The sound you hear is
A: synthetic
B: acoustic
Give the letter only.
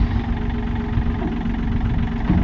B